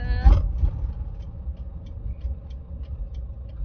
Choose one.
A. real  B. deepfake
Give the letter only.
A